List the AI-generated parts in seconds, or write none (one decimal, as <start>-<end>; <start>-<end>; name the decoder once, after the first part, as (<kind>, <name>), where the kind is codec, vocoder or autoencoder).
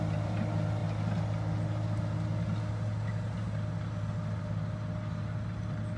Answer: none